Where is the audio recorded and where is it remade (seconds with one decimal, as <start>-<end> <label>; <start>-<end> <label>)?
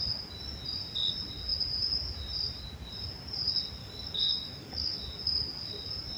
0.0-3.8 recorded; 3.8-5.0 remade; 5.0-6.2 recorded